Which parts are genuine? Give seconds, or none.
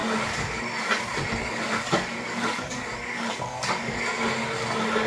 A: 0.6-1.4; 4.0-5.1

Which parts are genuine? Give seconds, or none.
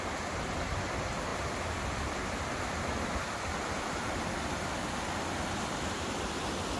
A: 0.0-1.3; 4.7-6.8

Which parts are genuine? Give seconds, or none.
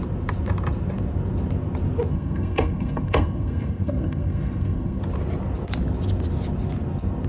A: 0.0-2.1; 5.0-7.3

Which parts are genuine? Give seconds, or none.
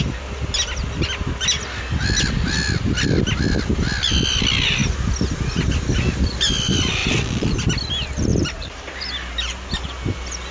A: 0.0-10.5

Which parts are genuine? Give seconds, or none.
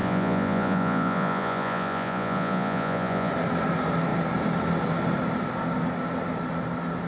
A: 3.3-7.1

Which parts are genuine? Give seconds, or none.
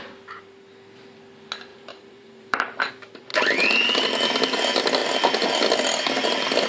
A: 0.0-1.7; 2.9-6.7